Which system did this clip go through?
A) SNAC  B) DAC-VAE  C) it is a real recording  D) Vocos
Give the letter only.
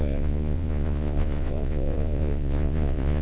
D